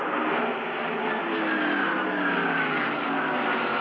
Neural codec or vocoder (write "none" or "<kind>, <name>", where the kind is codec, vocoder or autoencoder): none